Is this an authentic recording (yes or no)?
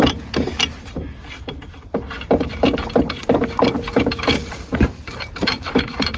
no